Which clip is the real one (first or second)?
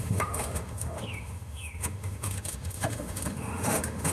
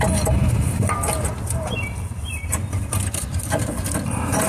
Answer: second